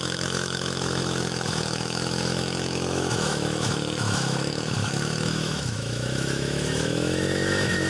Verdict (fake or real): fake